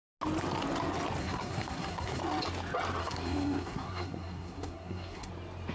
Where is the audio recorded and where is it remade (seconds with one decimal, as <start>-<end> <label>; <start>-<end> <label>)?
0.0-1.2 recorded; 1.2-2.2 remade; 2.2-3.0 recorded; 3.0-5.3 remade; 5.3-5.7 recorded